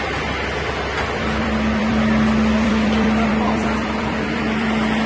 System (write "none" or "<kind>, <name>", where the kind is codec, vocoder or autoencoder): vocoder, BigVGAN v2